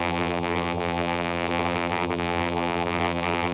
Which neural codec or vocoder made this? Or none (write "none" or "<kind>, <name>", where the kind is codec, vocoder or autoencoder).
vocoder, BigVGAN v2